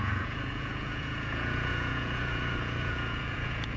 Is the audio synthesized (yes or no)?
yes